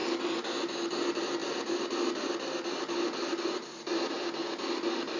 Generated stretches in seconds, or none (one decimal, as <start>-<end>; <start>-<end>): none